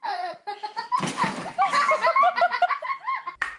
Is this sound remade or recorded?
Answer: recorded